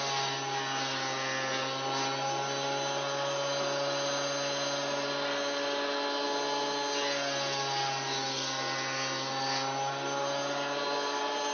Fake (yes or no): no